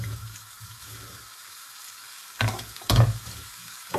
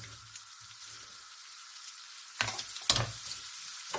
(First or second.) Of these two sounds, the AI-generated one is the first